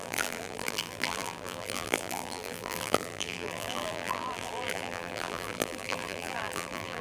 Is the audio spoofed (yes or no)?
yes